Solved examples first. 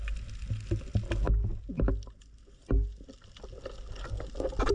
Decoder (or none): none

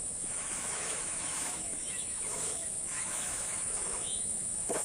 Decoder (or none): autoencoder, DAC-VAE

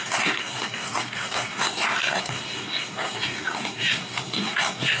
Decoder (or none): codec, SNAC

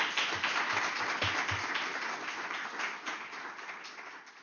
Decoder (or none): none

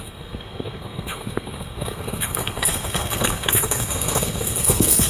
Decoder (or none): codec, SNAC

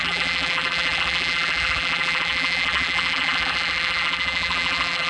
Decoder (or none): vocoder, BigVGAN v2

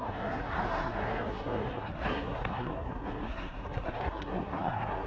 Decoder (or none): codec, SNAC